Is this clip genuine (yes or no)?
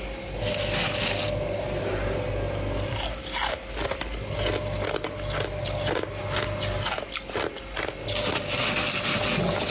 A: yes